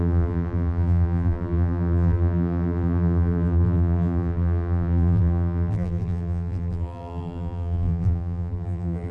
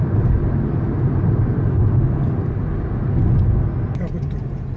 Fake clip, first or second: first